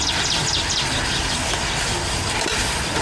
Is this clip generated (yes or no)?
no